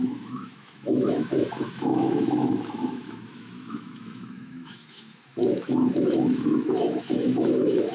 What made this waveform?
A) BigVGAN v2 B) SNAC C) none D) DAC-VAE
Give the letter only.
D